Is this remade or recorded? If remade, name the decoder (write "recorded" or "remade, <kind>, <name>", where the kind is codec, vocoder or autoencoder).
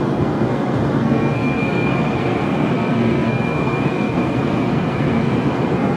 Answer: remade, codec, SNAC